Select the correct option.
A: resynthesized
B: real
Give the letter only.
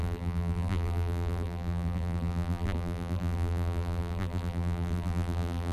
A